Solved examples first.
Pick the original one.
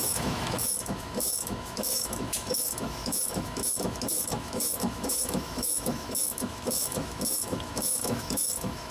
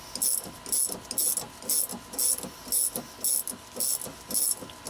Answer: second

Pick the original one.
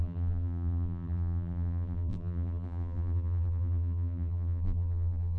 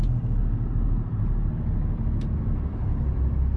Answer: second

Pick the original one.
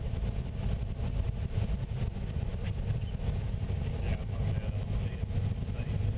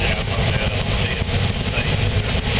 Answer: first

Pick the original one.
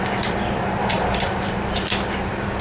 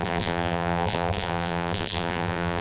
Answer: first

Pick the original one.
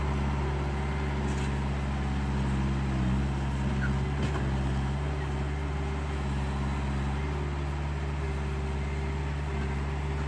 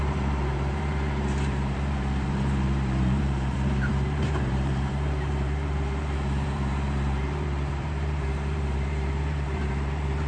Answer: first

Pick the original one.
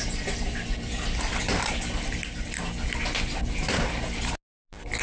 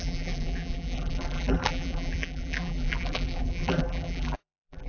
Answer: first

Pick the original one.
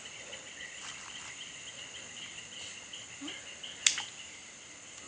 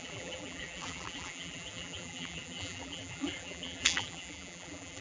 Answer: first